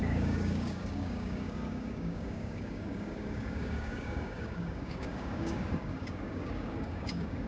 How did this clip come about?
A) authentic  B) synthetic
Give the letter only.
B